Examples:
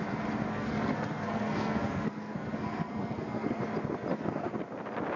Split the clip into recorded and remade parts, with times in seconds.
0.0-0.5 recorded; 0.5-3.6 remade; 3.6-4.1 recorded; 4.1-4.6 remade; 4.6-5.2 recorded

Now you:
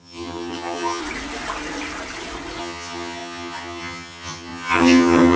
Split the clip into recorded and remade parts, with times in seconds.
0.0-1.0 remade; 1.0-2.6 recorded; 2.6-5.4 remade

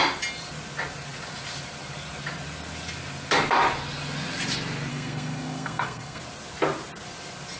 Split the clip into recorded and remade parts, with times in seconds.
0.0-4.9 recorded; 4.9-6.2 remade; 6.2-7.6 recorded